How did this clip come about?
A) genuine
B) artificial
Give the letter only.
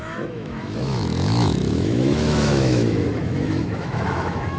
B